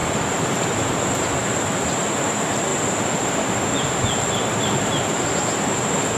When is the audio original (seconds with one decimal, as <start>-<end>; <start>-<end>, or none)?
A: 0.0-0.8; 2.7-4.3